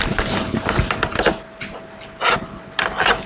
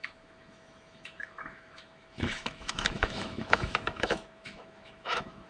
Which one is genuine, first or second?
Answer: first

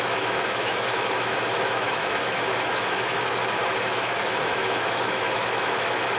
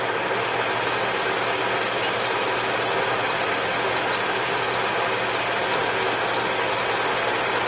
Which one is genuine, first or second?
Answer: second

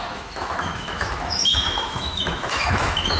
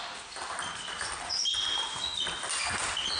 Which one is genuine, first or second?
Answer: second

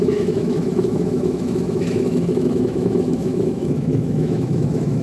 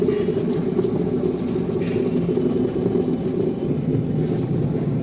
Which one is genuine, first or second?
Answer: second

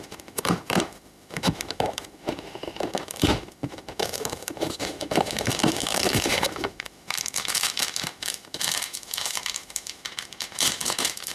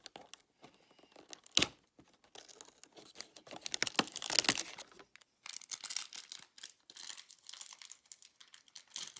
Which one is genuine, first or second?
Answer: second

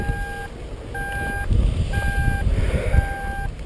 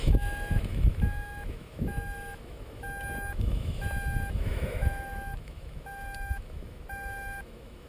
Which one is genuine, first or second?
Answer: first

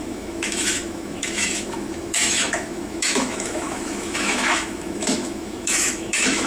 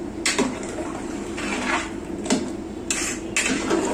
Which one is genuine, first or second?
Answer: second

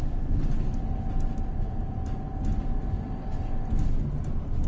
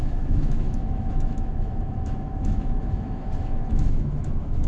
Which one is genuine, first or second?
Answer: first